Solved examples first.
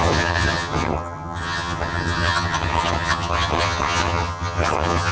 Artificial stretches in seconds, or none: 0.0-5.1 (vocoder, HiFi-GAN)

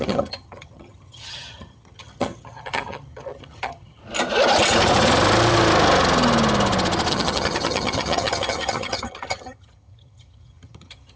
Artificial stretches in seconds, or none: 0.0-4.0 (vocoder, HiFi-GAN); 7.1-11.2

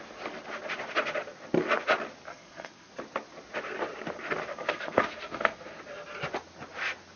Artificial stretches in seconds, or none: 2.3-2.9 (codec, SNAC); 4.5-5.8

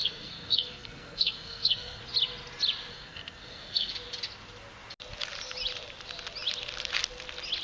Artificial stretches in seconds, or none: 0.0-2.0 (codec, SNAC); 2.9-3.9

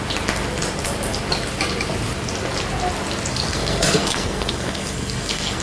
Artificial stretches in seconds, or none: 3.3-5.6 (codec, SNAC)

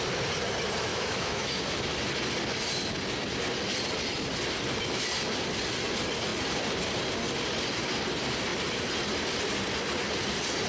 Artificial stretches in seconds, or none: 0.9-1.6 (autoencoder, DAC-VAE)

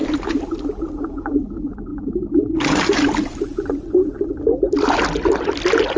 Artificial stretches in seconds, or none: none